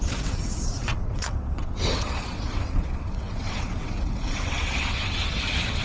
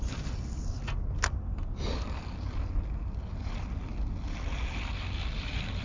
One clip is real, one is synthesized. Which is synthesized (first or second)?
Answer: first